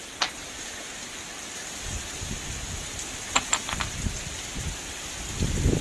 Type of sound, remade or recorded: recorded